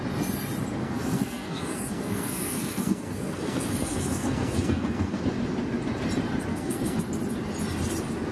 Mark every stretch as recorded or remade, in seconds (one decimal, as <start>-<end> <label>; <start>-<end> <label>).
0.0-0.8 recorded; 0.8-5.2 remade; 5.2-6.5 recorded; 6.5-7.0 remade; 7.0-8.3 recorded